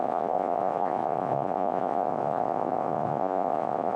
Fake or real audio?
fake